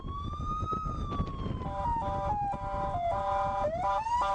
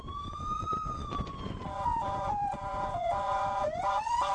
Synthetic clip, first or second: second